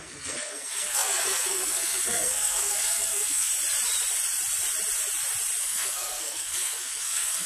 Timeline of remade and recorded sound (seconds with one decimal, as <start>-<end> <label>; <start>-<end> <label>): 0.0-3.5 remade; 3.5-5.6 recorded; 5.6-7.5 remade